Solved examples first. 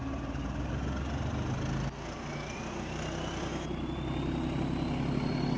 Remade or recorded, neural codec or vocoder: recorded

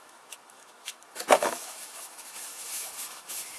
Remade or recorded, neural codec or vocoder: remade, autoencoder, DAC-VAE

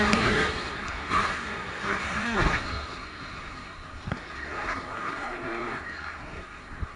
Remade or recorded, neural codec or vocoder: remade, codec, SNAC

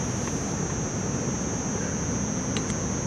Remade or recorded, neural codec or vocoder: recorded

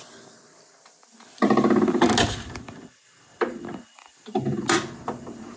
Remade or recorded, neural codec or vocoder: recorded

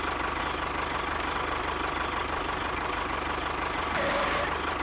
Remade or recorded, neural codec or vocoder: recorded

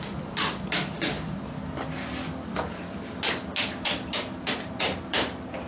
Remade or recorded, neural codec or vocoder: recorded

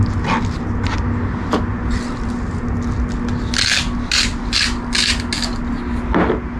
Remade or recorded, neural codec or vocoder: recorded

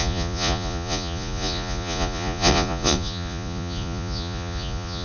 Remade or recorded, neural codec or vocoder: remade, vocoder, Vocos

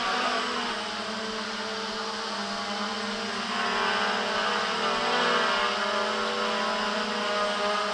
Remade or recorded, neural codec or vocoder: recorded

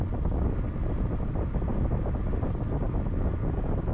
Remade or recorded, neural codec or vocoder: recorded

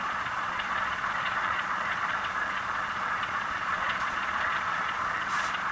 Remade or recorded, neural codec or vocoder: remade, vocoder, Vocos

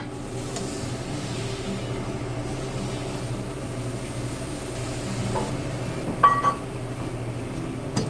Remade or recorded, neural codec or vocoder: recorded